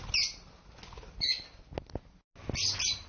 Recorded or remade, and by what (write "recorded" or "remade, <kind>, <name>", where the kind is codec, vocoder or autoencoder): recorded